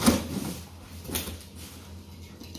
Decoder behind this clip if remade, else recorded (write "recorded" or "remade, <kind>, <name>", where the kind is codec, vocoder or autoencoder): recorded